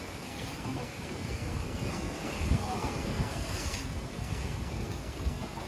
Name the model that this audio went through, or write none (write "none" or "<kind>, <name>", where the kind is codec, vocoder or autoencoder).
codec, SNAC